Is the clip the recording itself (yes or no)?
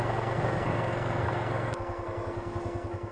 no